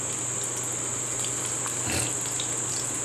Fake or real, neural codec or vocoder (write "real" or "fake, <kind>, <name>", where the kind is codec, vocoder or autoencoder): real